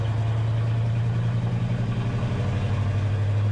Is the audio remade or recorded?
recorded